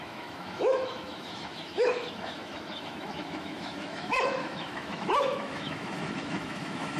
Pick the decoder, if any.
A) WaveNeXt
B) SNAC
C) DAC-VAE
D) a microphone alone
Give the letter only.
C